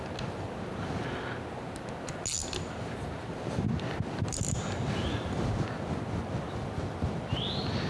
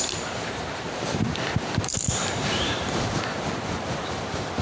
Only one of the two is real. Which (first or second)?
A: first